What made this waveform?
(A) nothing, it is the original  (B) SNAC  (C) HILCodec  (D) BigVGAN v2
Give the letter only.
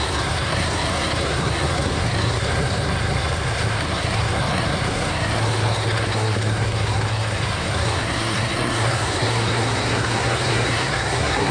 B